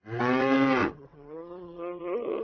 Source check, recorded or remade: remade